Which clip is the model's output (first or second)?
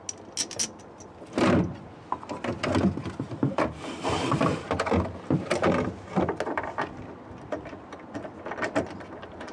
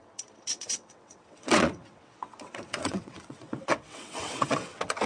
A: second